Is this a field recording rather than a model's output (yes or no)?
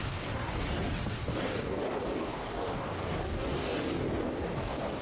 no